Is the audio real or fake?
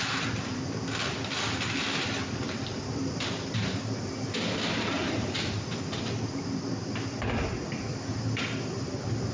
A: fake